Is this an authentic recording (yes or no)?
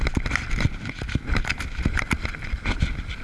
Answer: yes